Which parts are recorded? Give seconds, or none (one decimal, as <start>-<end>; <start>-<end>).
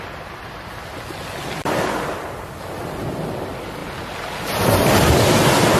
0.0-5.8